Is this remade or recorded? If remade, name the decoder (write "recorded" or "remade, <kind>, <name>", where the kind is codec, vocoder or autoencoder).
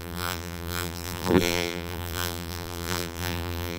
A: remade, vocoder, BigVGAN v2